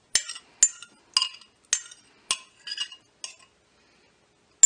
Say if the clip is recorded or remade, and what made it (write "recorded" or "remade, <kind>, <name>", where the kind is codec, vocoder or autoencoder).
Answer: recorded